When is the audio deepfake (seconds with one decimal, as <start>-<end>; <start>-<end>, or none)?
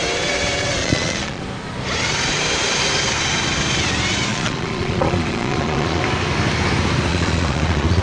0.8-1.4; 4.3-6.0; 7.1-8.0